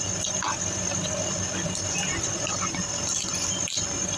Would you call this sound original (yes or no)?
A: yes